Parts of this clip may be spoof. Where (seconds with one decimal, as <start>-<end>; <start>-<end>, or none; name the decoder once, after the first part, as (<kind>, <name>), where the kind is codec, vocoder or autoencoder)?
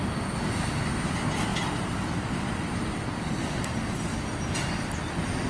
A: none